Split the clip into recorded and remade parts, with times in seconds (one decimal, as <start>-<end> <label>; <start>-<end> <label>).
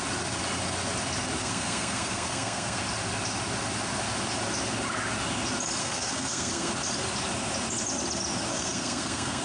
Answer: 0.0-1.4 recorded; 1.4-2.8 remade; 2.8-5.8 recorded; 5.8-6.7 remade; 6.7-8.5 recorded; 8.5-9.4 remade